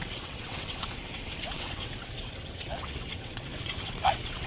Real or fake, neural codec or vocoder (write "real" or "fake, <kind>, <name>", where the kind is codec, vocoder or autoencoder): fake, vocoder, WaveNeXt